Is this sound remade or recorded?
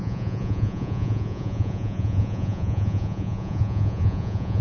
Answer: remade